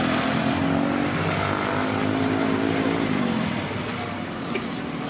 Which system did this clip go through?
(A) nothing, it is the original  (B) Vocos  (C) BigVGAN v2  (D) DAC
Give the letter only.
A